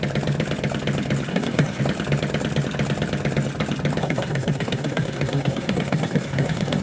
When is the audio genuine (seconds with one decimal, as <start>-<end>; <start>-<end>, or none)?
0.0-1.3; 1.8-4.0